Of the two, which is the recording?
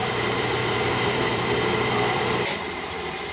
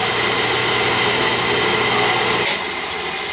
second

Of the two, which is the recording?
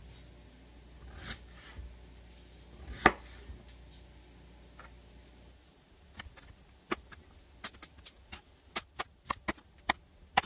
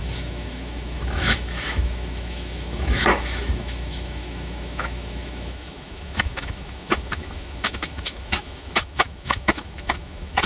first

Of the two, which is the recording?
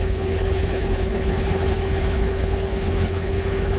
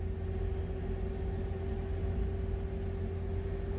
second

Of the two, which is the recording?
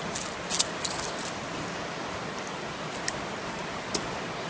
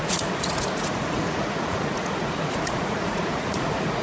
first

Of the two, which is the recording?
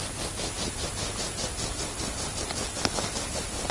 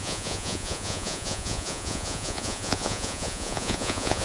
first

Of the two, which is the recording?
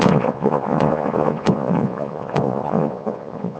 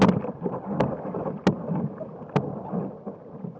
second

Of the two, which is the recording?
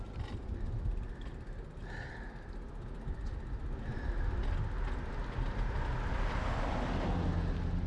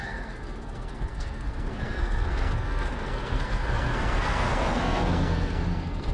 first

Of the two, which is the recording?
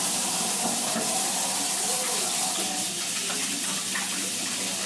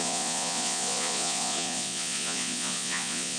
first